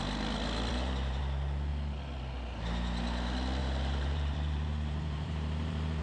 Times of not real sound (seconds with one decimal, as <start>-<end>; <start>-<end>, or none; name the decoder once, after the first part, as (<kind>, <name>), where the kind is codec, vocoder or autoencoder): 0.7-1.2 (vocoder, BigVGAN v2); 3.6-6.0